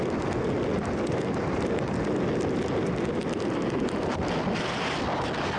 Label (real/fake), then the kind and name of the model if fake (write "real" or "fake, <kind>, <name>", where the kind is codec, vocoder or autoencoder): real